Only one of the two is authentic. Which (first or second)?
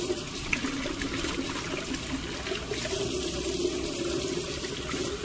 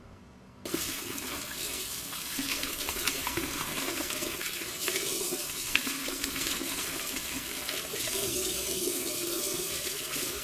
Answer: first